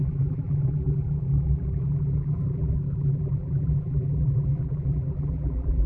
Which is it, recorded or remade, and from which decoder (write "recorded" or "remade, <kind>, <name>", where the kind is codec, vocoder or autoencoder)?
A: remade, vocoder, BigVGAN v2